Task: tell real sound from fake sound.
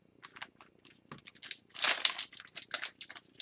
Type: real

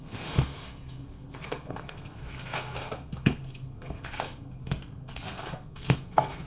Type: fake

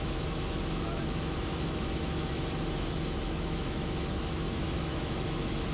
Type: fake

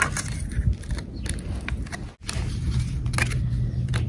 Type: real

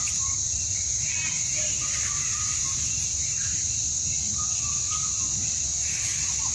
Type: fake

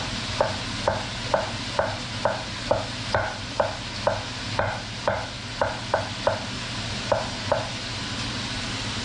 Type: real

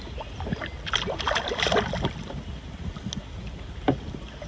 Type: real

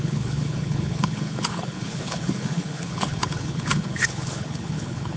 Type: fake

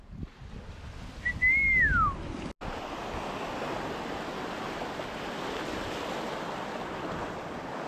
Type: real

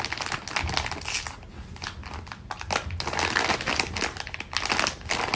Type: real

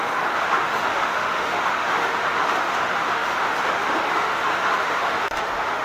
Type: fake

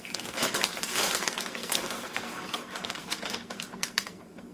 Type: fake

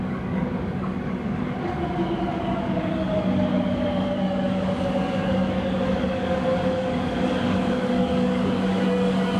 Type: fake